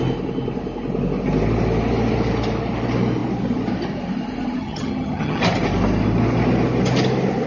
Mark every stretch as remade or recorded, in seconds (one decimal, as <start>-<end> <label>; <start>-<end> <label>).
0.0-4.6 recorded; 4.6-5.4 remade; 5.4-7.5 recorded